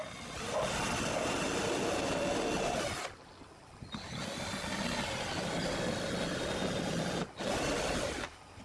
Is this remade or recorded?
recorded